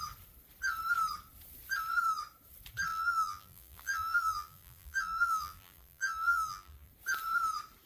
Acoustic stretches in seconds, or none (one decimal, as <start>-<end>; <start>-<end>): 0.0-2.9; 6.9-7.9